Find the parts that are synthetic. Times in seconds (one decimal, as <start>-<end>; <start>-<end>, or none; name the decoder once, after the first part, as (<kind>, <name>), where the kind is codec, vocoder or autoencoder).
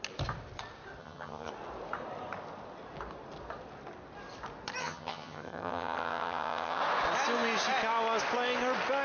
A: 1.0-1.5 (vocoder, HiFi-GAN); 4.8-6.8